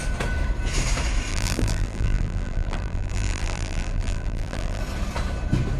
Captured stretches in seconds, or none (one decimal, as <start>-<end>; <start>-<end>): 0.0-1.3; 4.8-5.8